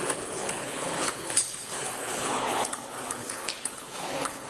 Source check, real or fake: fake